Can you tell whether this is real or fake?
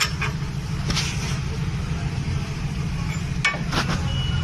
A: real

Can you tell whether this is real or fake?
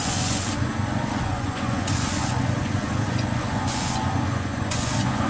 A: fake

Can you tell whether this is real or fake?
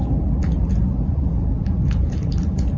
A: real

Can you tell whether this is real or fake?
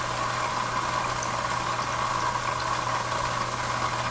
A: real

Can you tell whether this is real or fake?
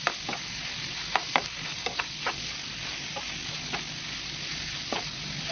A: real